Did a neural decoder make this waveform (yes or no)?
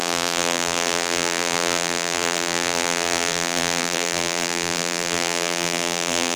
yes